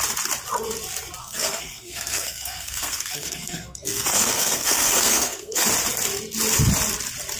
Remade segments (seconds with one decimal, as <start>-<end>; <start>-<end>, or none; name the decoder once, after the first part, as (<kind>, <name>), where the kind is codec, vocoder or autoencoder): 1.2-5.6 (codec, SNAC)

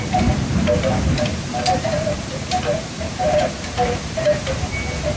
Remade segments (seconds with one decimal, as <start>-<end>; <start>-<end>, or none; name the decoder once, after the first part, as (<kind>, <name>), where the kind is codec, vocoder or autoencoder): 1.3-4.4 (vocoder, BigVGAN v2)

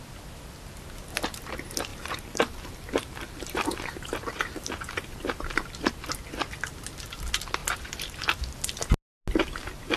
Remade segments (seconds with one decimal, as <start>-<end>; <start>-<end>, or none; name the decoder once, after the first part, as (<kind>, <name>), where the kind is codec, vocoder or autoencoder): 1.9-5.9 (vocoder, BigVGAN v2)

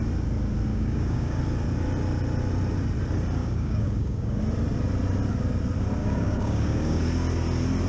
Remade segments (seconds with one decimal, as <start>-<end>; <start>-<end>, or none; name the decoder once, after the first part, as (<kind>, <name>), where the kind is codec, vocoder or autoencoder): 0.7-1.4 (codec, DAC); 3.4-4.4; 6.0-7.0

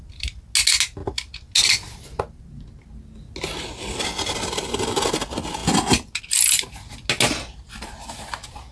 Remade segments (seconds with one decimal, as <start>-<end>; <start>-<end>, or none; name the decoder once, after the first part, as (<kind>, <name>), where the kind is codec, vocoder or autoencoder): none

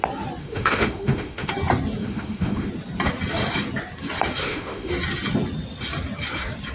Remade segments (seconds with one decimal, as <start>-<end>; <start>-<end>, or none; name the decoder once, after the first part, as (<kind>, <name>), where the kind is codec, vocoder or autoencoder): 0.4-1.5 (autoencoder, DAC-VAE); 2.0-2.7; 4.4-4.9

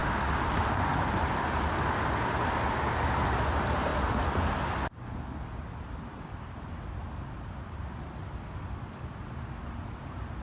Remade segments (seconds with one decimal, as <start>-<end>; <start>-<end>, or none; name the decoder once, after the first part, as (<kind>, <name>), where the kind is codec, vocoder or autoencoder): none